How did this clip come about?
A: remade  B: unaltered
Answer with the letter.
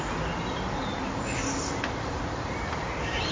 B